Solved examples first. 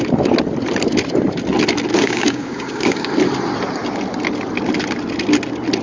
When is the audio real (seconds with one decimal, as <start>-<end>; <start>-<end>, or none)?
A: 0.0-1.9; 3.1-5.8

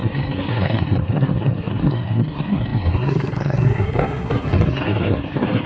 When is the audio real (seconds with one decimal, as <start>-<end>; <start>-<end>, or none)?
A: none

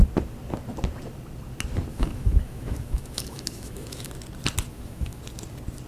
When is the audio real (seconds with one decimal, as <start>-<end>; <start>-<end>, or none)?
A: 0.0-1.9; 4.1-4.7; 5.2-5.9

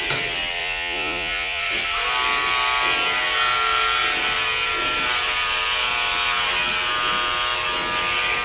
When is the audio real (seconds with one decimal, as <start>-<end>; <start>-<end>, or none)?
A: 0.0-0.6; 1.6-8.4